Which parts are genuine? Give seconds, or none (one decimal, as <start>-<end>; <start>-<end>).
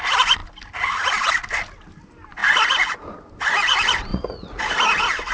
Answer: 0.0-4.1; 4.6-5.3